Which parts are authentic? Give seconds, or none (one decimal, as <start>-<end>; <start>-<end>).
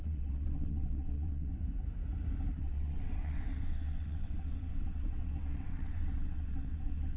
1.5-2.5